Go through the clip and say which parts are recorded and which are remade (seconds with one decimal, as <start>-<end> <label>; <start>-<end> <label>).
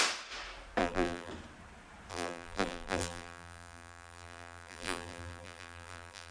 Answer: 0.0-0.8 recorded; 0.8-1.3 remade; 1.3-2.1 recorded; 2.1-6.3 remade